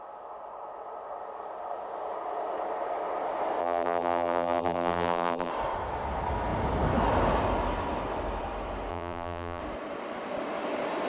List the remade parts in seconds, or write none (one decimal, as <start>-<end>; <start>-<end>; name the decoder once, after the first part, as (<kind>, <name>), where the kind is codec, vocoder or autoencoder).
3.6-5.5 (vocoder, BigVGAN v2); 8.9-9.6